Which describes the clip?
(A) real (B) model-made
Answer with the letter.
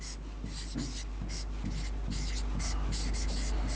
A